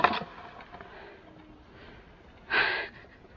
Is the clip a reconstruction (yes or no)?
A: no